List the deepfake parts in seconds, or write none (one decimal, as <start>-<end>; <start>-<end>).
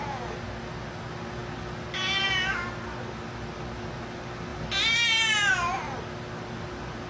none